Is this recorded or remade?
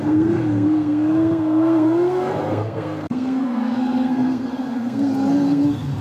remade